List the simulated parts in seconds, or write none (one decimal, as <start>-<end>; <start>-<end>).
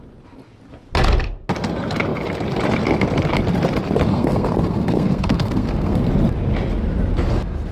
4.1-6.1